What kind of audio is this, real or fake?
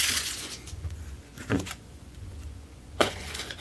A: fake